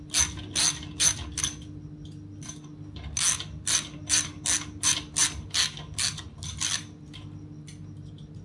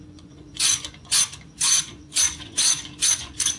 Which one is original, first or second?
first